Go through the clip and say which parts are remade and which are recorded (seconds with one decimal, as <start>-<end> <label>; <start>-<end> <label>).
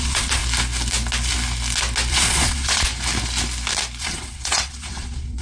0.0-0.4 remade; 0.4-2.1 recorded; 2.1-2.9 remade; 2.9-4.0 recorded; 4.0-5.4 remade